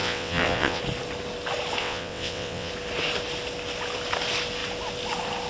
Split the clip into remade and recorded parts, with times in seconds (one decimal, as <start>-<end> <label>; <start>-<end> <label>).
0.0-0.8 remade; 0.8-1.8 recorded; 1.8-2.7 remade; 2.7-5.5 recorded